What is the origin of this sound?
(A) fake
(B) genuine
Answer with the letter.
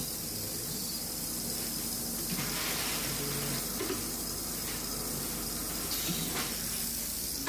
B